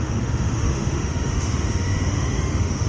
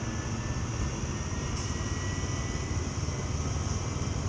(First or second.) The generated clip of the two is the first